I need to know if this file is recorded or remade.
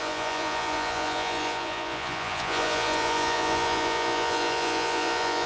remade